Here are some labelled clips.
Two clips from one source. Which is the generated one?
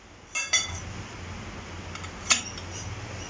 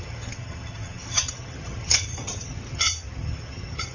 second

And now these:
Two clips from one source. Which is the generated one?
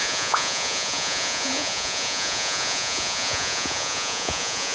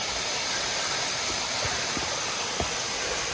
first